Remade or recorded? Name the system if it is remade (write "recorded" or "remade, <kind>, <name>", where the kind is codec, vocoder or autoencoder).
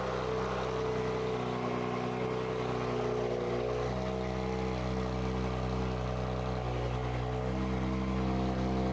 recorded